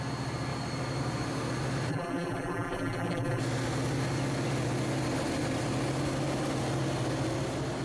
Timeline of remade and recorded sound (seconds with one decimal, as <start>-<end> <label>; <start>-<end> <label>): 0.0-1.9 recorded; 1.9-3.4 remade; 3.4-7.8 recorded